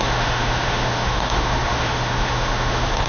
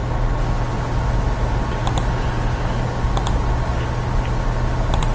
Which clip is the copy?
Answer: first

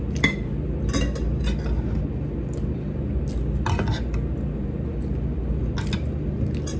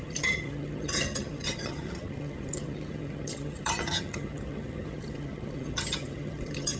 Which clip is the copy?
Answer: second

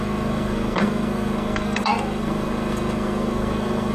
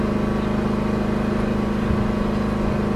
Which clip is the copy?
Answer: first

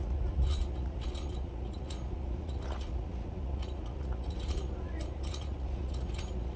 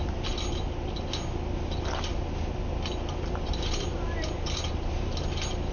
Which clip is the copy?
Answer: first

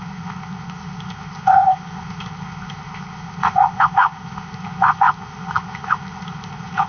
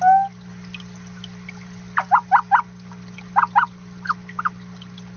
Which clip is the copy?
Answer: first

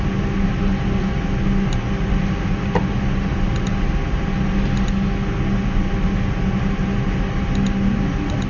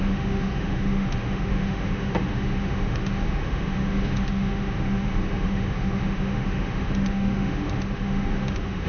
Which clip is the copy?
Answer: second